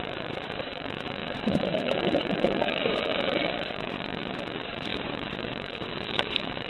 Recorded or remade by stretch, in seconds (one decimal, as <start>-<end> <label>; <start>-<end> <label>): 0.0-6.7 remade